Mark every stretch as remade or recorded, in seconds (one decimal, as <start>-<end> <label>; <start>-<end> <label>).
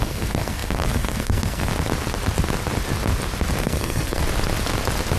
0.0-1.7 remade; 1.7-3.6 recorded; 3.6-4.2 remade; 4.2-5.2 recorded